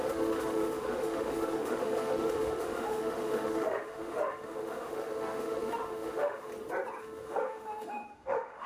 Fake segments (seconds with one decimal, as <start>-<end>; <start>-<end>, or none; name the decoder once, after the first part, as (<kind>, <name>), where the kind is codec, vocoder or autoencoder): 0.0-6.5 (autoencoder, DAC-VAE); 7.0-8.7